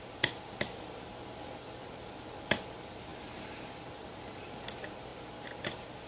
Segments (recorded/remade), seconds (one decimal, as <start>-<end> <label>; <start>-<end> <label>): 0.0-6.1 recorded